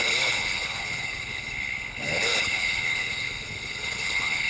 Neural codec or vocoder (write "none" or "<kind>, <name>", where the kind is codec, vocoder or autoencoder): codec, HILCodec